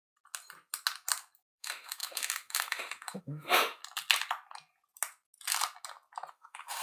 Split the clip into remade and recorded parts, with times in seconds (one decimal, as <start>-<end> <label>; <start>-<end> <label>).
0.0-1.5 recorded; 1.5-3.8 remade; 3.8-6.3 recorded; 6.3-6.8 remade